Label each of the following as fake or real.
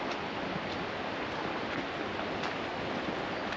real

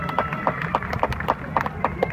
fake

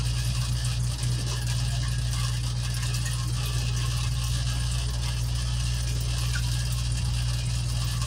real